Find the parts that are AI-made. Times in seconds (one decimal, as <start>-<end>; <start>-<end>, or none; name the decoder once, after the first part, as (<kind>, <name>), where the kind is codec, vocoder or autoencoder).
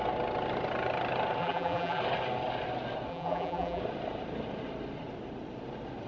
1.4-2.0 (vocoder, BigVGAN v2); 3.1-3.8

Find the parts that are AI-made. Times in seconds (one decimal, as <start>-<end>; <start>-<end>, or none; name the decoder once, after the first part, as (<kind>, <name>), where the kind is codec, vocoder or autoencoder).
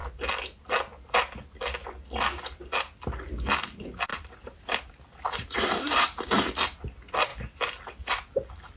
4.1-6.4 (vocoder, BigVGAN v2)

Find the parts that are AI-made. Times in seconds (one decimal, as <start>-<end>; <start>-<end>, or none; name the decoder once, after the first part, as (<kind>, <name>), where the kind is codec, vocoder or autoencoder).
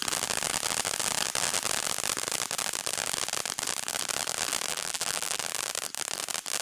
4.7-5.4 (vocoder, BigVGAN v2)